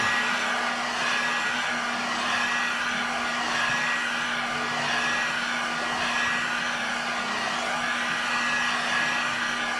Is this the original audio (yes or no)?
yes